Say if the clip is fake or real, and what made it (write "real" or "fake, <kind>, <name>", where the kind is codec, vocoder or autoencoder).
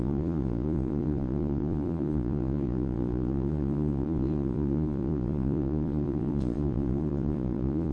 fake, vocoder, Vocos